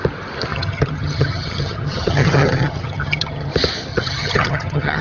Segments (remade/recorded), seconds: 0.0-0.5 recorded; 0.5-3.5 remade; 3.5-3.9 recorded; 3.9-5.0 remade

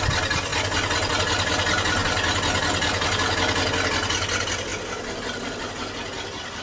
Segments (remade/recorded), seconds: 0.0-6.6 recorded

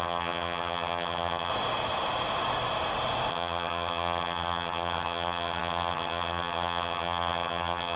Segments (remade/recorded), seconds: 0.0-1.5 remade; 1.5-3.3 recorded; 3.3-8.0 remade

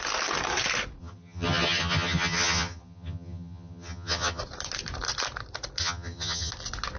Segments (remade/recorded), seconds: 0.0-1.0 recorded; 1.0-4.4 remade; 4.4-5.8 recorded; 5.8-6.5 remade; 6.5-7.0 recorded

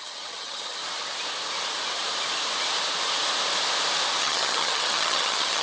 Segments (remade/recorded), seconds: 0.0-0.8 remade; 0.8-4.2 recorded; 4.2-5.6 remade